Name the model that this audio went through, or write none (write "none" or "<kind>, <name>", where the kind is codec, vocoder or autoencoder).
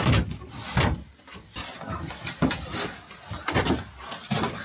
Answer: none